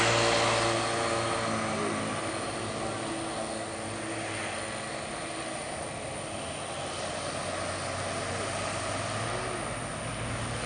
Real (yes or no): yes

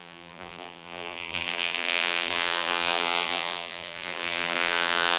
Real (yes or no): no